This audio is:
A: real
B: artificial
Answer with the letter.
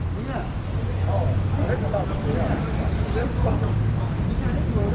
A